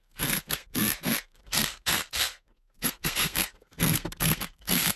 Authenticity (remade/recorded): remade